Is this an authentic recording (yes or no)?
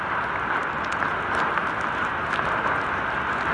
yes